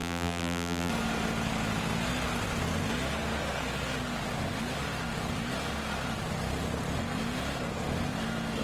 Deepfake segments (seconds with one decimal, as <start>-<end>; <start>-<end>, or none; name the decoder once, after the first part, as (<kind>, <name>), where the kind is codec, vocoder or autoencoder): 0.0-0.9 (vocoder, BigVGAN v2)